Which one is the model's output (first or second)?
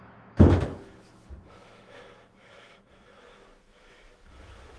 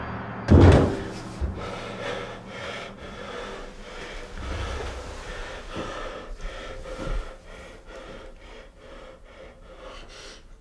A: first